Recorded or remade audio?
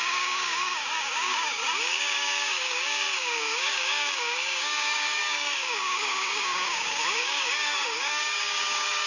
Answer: remade